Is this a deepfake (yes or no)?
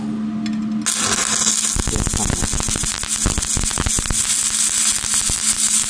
no